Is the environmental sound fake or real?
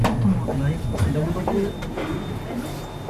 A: real